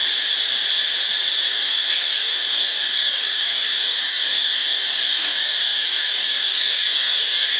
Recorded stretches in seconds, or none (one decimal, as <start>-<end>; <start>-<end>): 0.0-1.5